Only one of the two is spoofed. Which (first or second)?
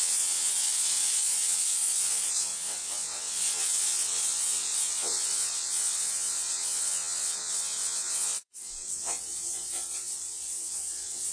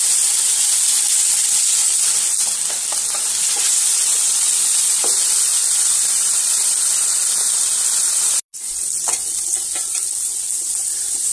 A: first